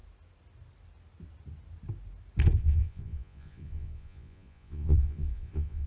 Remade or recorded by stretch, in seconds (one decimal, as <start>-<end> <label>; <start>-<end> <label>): 0.0-2.6 recorded; 2.6-5.9 remade